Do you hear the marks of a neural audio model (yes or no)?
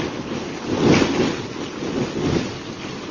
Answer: no